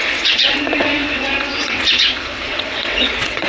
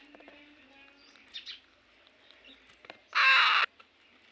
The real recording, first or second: second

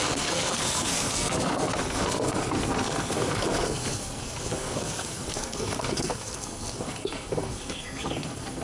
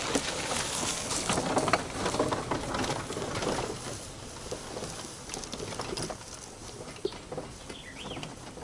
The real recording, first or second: second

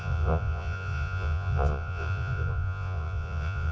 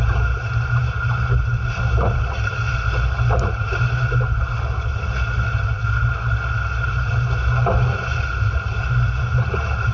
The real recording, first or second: second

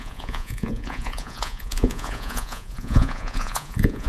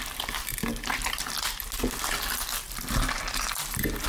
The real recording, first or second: second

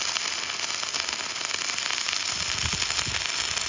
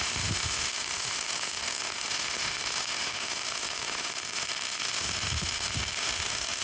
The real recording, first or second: first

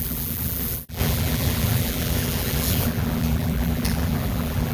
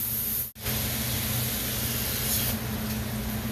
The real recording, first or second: second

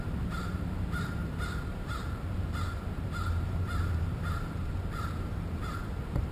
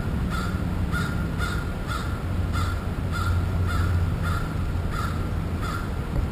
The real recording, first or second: second